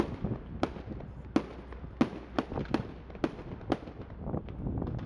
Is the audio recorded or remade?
recorded